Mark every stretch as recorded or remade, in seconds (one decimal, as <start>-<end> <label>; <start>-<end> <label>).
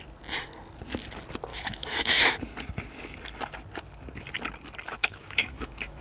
0.0-1.5 recorded; 1.5-2.4 remade; 2.4-5.0 recorded; 5.0-6.0 remade